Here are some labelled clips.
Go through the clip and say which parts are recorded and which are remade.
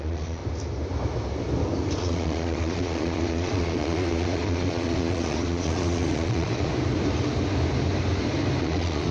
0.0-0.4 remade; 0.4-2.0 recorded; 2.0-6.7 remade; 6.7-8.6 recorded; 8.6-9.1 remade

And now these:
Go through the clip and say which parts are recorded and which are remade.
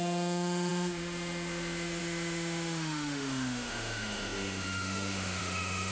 0.0-5.9 remade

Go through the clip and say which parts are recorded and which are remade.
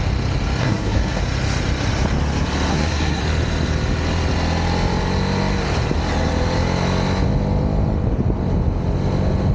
0.0-0.6 recorded; 0.6-1.2 remade; 1.2-2.7 recorded; 2.7-3.2 remade; 3.2-9.5 recorded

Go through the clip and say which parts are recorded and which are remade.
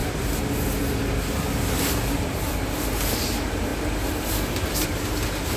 0.0-5.6 recorded